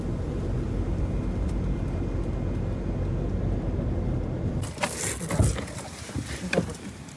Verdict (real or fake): real